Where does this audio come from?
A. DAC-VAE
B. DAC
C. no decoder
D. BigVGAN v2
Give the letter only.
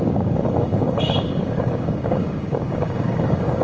B